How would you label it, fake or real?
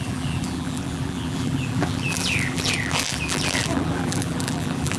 fake